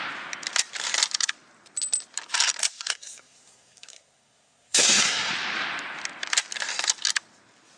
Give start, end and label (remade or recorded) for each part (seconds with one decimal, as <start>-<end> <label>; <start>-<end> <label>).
0.0-2.6 recorded; 2.6-5.3 remade; 5.3-7.8 recorded